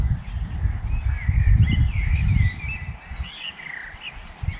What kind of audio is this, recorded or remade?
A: remade